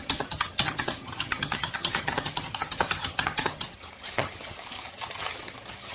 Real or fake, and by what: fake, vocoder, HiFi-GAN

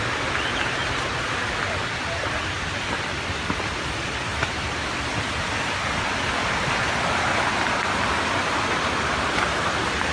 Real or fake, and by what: fake, vocoder, BigVGAN v2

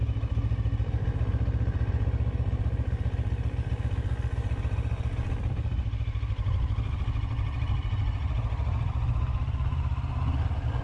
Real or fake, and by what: real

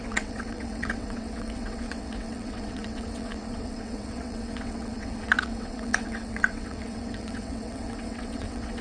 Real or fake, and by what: fake, vocoder, WaveNeXt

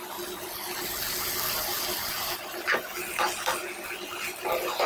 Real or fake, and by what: real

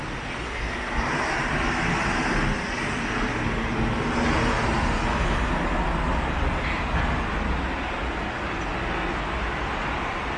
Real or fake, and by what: real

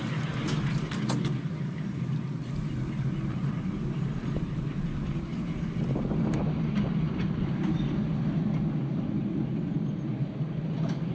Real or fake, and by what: real